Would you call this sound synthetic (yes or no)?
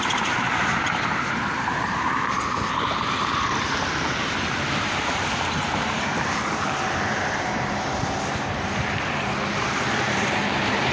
yes